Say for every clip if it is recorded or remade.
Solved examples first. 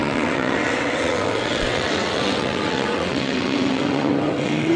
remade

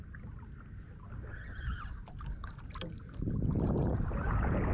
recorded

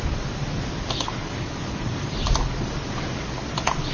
recorded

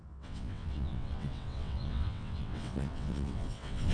remade